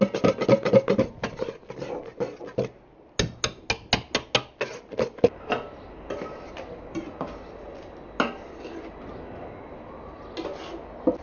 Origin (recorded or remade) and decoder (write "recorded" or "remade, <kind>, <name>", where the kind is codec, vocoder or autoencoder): recorded